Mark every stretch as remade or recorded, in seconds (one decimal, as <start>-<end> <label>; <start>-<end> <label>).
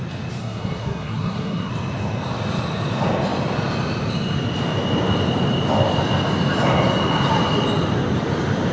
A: 0.0-0.4 recorded; 0.4-1.7 remade; 1.7-8.7 recorded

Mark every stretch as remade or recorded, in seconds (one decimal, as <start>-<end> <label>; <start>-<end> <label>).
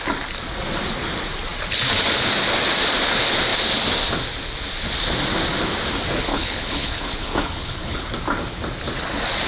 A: 0.0-6.3 recorded; 6.3-8.1 remade; 8.1-9.5 recorded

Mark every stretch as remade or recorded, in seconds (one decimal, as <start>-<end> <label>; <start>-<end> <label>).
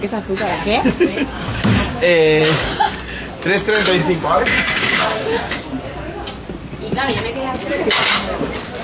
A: 0.0-0.5 recorded; 0.5-2.4 remade; 2.4-4.0 recorded; 4.0-5.6 remade; 5.6-8.8 recorded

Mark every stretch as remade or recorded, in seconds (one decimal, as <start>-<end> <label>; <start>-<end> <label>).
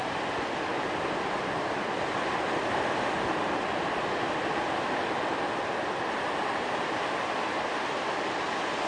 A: 0.0-8.9 recorded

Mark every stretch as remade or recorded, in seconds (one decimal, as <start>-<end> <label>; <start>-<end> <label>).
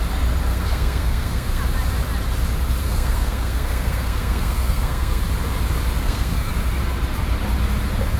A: 0.0-0.5 recorded; 0.5-1.6 remade; 1.6-2.8 recorded; 2.8-5.2 remade; 5.2-6.0 recorded; 6.0-6.5 remade; 6.5-8.2 recorded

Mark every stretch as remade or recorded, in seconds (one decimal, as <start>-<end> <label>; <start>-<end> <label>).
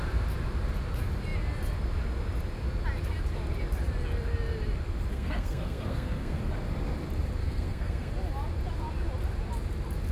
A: 0.0-5.1 recorded; 5.1-6.4 remade; 6.4-7.4 recorded; 7.4-8.1 remade; 8.1-10.1 recorded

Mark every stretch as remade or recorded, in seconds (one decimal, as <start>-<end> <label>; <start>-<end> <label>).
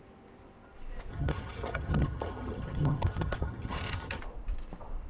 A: 0.0-1.1 recorded; 1.1-4.2 remade; 4.2-5.1 recorded